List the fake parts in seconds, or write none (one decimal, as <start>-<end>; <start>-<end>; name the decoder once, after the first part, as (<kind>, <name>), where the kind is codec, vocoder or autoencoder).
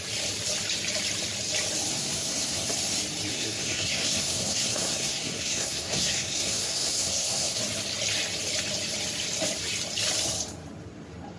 1.9-2.7 (codec, SNAC); 3.3-7.6